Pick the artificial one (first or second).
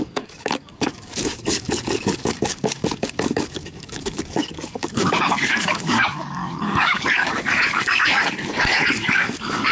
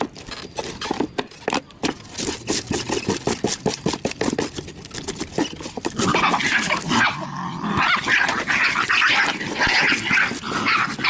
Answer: first